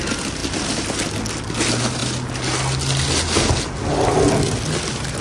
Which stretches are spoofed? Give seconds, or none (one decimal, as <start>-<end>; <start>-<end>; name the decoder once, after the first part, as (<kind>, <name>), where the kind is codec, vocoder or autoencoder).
none